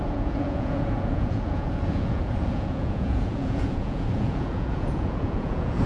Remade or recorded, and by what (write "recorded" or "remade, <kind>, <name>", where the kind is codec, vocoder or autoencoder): remade, vocoder, Vocos